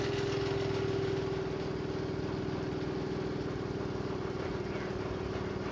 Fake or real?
real